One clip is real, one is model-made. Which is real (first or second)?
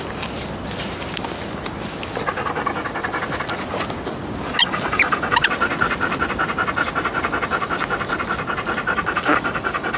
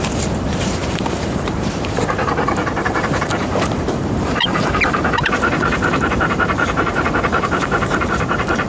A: first